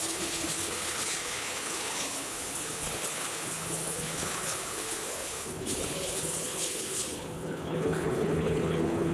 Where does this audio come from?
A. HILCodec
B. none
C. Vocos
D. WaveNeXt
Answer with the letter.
A